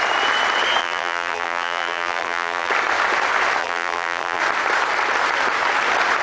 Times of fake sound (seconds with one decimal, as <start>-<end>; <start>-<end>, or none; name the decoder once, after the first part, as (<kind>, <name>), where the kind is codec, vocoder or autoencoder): 0.8-2.7 (vocoder, BigVGAN v2); 3.6-4.4